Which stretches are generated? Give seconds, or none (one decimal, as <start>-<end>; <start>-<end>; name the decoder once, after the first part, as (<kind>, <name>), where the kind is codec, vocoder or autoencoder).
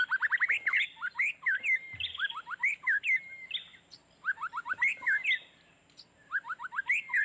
none